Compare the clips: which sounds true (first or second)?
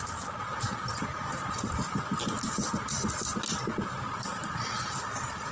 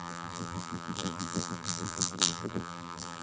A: first